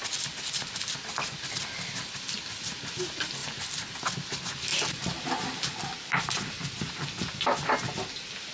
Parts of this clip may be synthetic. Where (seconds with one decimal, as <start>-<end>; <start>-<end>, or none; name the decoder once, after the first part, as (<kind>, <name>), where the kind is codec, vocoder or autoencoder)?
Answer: 3.4-4.0 (vocoder, BigVGAN v2); 4.7-6.6